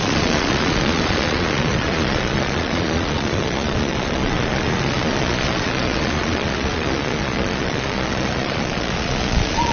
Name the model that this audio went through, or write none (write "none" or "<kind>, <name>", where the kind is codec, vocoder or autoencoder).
vocoder, Vocos